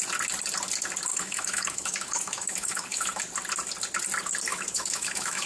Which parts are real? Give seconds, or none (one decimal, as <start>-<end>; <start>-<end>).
0.0-1.1; 3.2-4.5